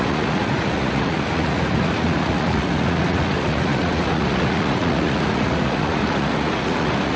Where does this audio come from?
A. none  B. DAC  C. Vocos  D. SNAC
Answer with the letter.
C